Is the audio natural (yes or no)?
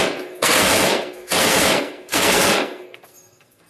no